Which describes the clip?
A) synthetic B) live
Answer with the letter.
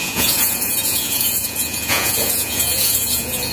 A